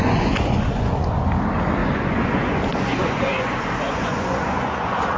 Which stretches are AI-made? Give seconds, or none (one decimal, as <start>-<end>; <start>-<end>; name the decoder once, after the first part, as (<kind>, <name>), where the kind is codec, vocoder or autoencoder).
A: 0.0-1.2 (vocoder, Vocos); 1.8-5.2